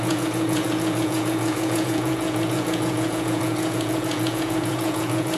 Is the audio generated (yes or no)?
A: yes